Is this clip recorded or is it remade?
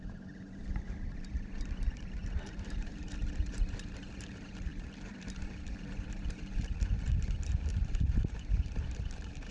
remade